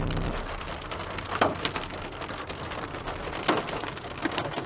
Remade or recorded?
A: remade